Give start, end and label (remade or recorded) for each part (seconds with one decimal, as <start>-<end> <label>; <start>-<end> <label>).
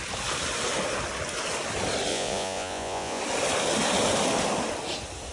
0.0-2.1 recorded; 2.1-3.2 remade; 3.2-5.3 recorded